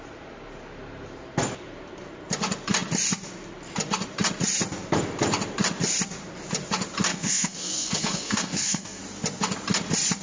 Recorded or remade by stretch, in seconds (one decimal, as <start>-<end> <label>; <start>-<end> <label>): 0.0-7.1 recorded; 7.1-9.0 remade; 9.0-10.2 recorded